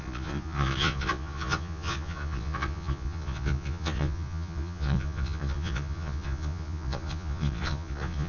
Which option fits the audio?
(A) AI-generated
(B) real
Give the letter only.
A